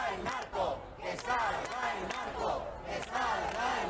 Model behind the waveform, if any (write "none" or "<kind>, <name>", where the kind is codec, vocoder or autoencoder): none